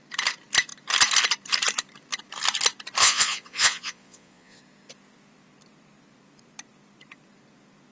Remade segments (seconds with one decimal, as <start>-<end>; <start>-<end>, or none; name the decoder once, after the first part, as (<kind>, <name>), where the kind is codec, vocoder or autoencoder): 3.0-4.6 (vocoder, Vocos)